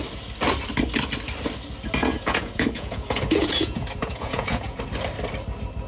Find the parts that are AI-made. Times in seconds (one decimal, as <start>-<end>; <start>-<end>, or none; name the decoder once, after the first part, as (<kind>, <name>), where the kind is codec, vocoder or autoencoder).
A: 2.0-4.8 (vocoder, Vocos)